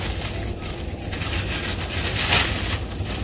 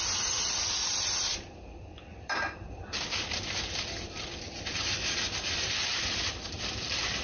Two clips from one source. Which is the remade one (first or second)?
second